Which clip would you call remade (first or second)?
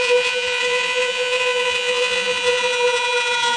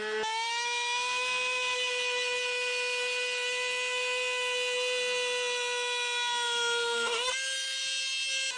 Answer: first